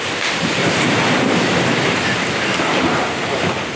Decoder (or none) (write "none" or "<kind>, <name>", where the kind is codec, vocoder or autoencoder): none